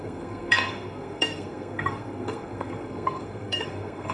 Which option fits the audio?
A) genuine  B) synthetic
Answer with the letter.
B